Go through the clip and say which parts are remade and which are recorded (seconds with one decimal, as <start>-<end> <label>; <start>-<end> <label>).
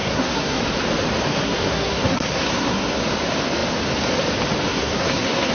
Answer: 0.0-0.6 remade; 0.6-1.3 recorded; 1.3-3.0 remade; 3.0-4.7 recorded; 4.7-5.5 remade